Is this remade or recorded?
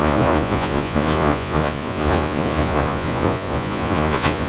remade